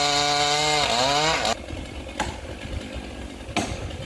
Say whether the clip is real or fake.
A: real